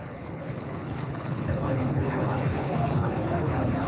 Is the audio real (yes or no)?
no